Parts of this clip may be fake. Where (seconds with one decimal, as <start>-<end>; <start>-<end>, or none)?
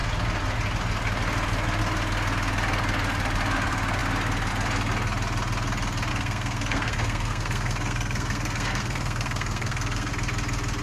6.1-10.1